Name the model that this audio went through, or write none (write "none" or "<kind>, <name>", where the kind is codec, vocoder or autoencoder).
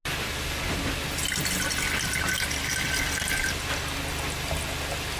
none